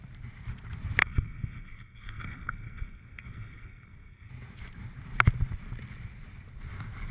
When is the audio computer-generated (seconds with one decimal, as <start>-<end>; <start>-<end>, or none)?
1.0-4.3

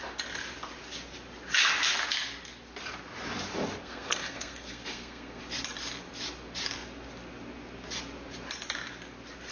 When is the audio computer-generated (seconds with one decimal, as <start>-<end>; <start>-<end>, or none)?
3.8-5.4

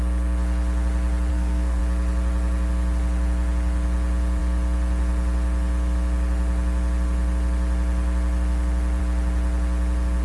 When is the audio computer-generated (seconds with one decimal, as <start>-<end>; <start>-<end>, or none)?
1.3-1.8

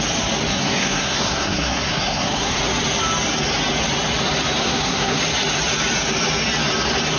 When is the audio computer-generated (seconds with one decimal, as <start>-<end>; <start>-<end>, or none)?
0.5-2.6; 4.6-5.2

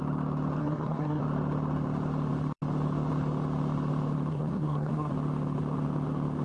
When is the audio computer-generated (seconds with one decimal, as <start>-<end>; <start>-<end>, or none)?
0.6-1.2; 4.3-5.1

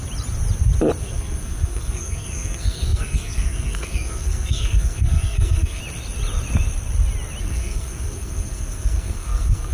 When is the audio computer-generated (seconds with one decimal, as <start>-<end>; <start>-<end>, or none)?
1.0-5.8; 7.4-9.7

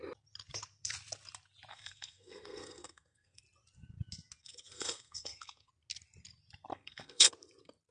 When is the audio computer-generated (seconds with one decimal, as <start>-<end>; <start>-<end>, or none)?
1.7-3.4; 4.4-5.7; 6.7-7.3